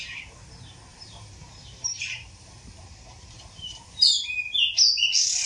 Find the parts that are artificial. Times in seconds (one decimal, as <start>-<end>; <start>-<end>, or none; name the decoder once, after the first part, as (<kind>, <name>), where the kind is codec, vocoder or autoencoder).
0.9-4.2 (vocoder, BigVGAN v2)